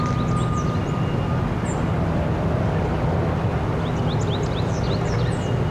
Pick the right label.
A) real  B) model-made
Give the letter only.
A